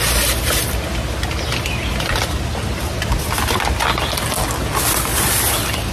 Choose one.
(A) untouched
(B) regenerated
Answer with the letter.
A